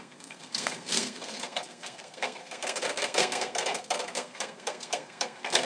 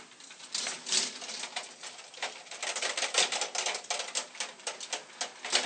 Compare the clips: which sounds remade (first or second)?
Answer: first